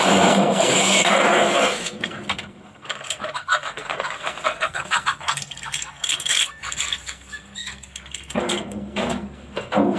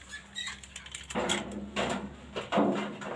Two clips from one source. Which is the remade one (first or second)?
first